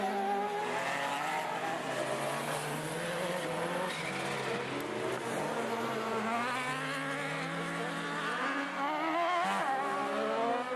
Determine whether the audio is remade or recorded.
recorded